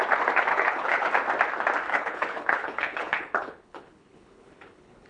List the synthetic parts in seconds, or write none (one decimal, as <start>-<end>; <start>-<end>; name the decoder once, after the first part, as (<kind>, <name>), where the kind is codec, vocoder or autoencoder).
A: 0.5-1.1 (codec, HILCodec); 1.9-5.1